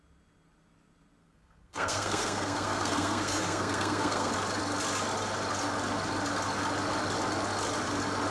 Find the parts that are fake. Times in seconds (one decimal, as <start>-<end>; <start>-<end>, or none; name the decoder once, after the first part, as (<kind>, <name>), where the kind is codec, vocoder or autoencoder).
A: 1.2-4.3 (codec, SNAC)